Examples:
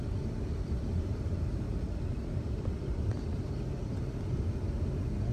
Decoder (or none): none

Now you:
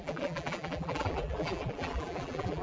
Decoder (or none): vocoder, BigVGAN v2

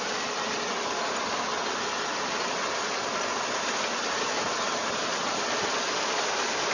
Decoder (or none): vocoder, BigVGAN v2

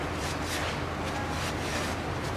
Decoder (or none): none